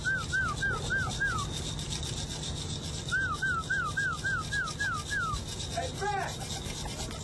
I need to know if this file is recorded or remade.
recorded